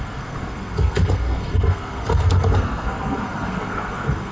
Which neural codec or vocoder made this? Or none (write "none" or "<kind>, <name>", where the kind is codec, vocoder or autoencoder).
codec, SNAC